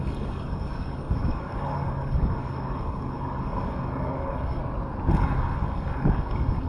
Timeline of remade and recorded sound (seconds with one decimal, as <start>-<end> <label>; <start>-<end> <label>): 0.0-4.6 remade; 4.6-5.1 recorded; 5.1-6.7 remade